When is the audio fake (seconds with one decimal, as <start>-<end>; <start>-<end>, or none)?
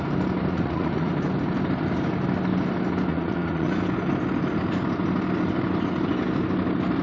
0.5-1.1; 3.1-3.7